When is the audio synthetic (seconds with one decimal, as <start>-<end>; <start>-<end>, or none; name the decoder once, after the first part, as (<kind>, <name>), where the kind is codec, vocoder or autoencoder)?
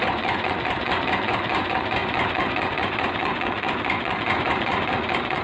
0.0-5.4 (vocoder, Vocos)